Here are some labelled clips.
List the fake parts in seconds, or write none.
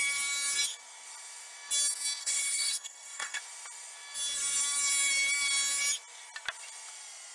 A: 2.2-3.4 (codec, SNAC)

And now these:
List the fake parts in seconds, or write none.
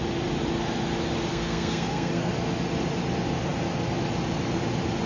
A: 1.3-2.3 (codec, SNAC)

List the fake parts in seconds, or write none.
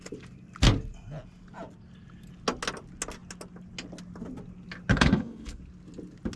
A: 4.9-5.6 (codec, SNAC)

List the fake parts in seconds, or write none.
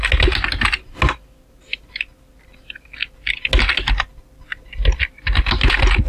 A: none